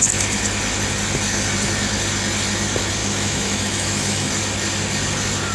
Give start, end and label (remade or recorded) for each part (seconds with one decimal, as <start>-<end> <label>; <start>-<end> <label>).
0.0-3.0 recorded; 3.0-4.3 remade; 4.3-5.5 recorded